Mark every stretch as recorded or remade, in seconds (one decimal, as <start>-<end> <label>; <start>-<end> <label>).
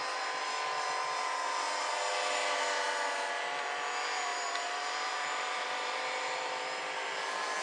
0.0-4.3 recorded; 4.3-6.8 remade; 6.8-7.6 recorded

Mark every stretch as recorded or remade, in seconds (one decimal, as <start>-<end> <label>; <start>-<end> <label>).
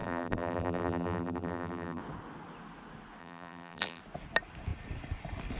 0.0-2.0 remade; 2.0-3.2 recorded; 3.2-4.0 remade; 4.0-5.6 recorded